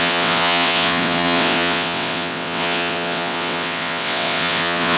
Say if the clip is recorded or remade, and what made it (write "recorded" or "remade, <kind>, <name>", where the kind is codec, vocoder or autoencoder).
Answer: remade, vocoder, WaveNeXt